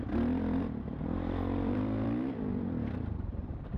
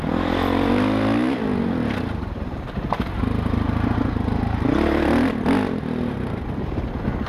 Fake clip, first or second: first